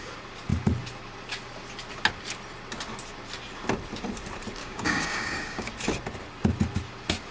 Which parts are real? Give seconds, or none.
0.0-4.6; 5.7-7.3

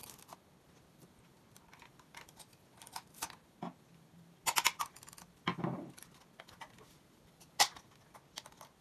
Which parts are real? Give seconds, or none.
0.0-8.8